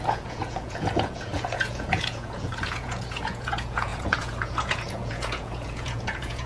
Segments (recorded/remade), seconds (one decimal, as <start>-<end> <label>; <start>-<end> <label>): 0.0-6.5 remade